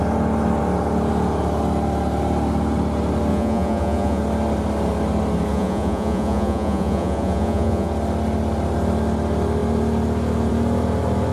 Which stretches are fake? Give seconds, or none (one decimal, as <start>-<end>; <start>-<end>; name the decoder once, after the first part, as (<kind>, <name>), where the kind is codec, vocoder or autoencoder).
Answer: 3.3-4.2 (vocoder, Vocos); 5.5-7.9